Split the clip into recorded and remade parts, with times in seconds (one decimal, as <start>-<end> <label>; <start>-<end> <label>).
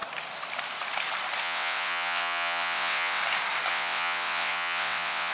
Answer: 0.0-1.4 recorded; 1.4-3.2 remade; 3.2-3.7 recorded; 3.7-5.3 remade